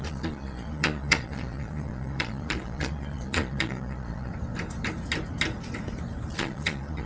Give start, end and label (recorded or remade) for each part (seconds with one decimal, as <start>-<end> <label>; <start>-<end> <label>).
0.0-4.3 remade; 4.3-6.3 recorded; 6.3-7.1 remade